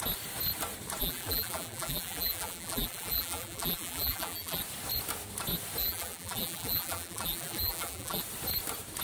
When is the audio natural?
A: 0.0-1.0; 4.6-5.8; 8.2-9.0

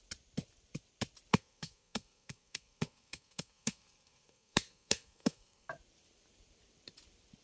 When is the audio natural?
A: 0.0-1.3; 5.7-7.4

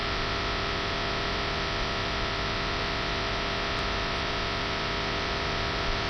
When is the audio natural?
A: 0.0-6.1

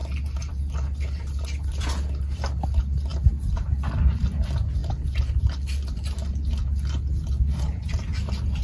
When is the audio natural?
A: 0.0-8.6